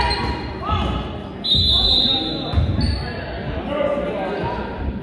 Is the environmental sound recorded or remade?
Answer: recorded